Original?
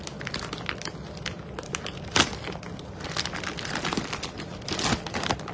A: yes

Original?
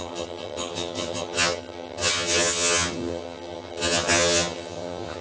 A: no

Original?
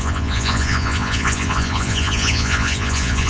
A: no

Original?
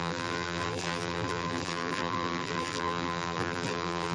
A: no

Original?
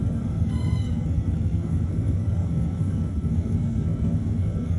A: no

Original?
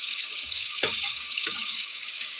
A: no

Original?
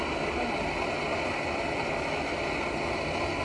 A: yes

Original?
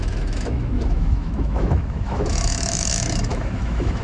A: no